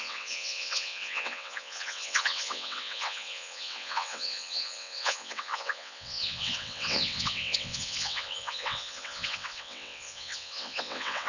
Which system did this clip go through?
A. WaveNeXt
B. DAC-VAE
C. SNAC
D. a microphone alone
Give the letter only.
A